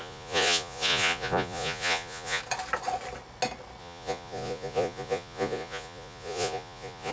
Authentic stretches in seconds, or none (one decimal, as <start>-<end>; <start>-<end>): 2.4-3.8